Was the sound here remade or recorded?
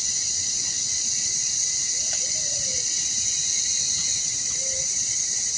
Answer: recorded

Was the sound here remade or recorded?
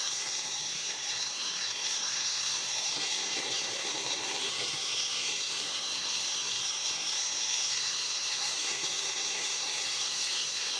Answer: remade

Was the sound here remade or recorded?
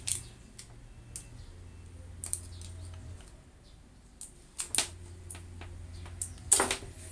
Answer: recorded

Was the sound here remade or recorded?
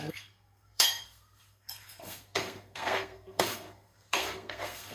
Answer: remade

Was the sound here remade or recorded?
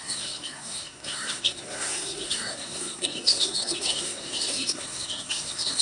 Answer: remade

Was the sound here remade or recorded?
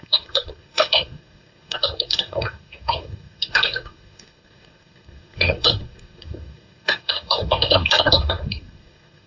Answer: remade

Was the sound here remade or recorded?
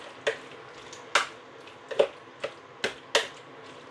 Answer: recorded